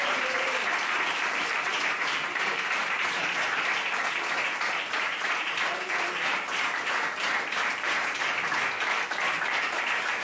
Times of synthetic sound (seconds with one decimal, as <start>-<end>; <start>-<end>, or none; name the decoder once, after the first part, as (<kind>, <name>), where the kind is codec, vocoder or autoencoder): 0.0-8.3 (vocoder, BigVGAN v2); 9.2-10.2